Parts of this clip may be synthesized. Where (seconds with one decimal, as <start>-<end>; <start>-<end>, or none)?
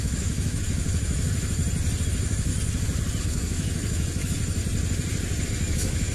0.0-1.6; 2.1-2.5; 3.2-4.6; 5.4-6.1